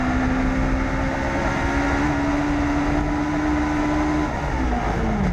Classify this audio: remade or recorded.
recorded